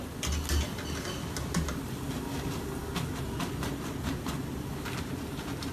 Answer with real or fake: real